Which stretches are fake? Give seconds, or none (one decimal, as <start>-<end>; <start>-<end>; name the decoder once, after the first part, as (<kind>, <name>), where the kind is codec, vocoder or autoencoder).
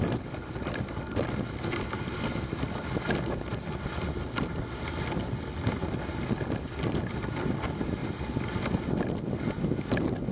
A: none